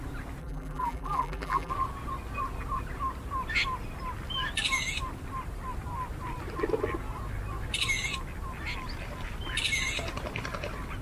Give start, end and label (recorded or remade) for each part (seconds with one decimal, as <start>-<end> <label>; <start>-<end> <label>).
0.0-0.4 recorded; 0.4-1.7 remade; 1.7-11.0 recorded